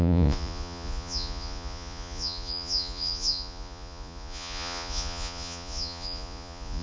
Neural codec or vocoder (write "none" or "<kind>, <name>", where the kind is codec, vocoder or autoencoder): vocoder, Vocos